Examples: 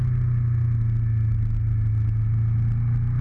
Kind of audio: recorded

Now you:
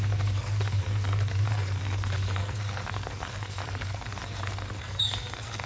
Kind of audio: remade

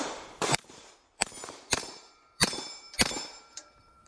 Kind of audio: remade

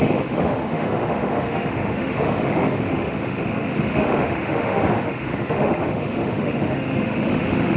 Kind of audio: remade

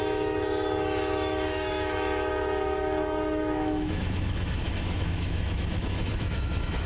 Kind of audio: remade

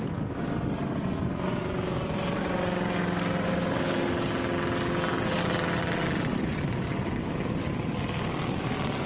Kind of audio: recorded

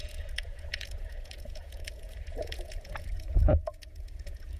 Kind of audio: remade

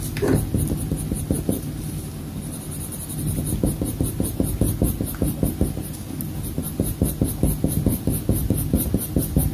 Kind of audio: recorded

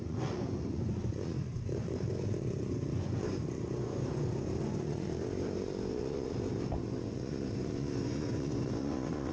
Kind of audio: remade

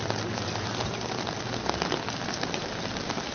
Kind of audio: recorded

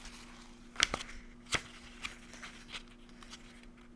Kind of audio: recorded